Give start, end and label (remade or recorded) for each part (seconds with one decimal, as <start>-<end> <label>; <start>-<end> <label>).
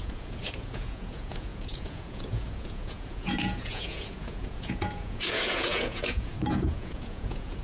0.0-7.6 remade